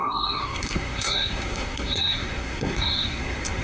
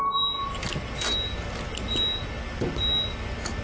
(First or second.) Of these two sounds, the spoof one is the first